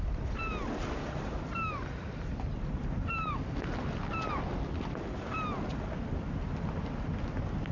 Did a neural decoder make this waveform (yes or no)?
no